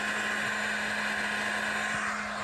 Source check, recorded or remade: recorded